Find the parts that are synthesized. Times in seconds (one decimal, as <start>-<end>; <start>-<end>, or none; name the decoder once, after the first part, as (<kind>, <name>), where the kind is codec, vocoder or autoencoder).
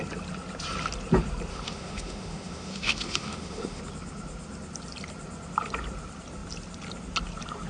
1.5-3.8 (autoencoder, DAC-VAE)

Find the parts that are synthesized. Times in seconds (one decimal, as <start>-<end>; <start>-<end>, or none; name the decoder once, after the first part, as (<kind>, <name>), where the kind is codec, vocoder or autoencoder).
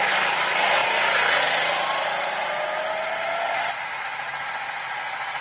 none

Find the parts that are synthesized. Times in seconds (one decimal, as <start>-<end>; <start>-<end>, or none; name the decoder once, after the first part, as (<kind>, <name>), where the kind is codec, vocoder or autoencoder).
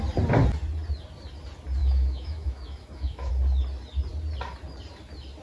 1.8-3.3 (autoencoder, DAC-VAE)